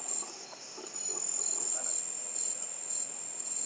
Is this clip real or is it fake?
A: real